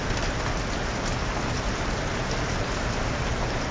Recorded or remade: recorded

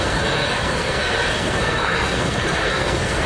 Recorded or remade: remade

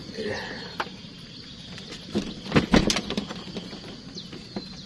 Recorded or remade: recorded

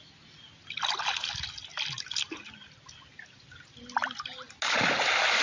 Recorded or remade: recorded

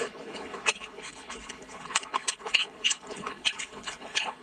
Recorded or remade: remade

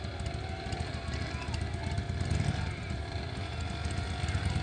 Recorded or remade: recorded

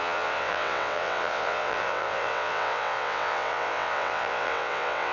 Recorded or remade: remade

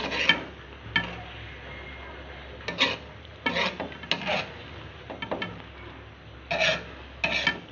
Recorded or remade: recorded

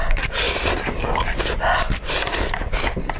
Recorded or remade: recorded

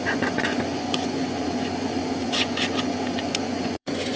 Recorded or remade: remade